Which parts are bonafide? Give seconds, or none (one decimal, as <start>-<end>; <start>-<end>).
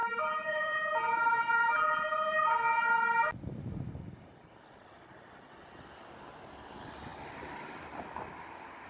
1.6-8.9